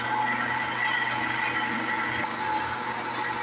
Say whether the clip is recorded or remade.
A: recorded